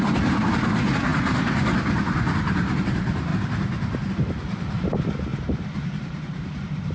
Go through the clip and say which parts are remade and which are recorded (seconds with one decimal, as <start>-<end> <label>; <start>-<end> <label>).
0.0-3.3 remade; 3.3-4.1 recorded; 4.1-6.9 remade